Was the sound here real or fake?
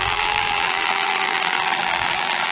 fake